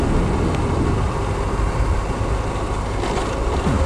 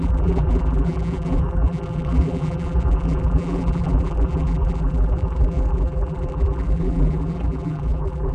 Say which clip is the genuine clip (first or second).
first